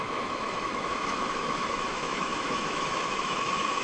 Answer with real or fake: fake